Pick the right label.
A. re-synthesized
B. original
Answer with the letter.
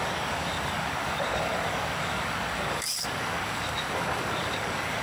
A